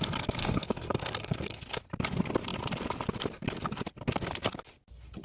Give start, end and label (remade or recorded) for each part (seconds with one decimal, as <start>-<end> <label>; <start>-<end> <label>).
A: 0.0-0.4 recorded; 0.4-1.8 remade; 1.8-5.2 recorded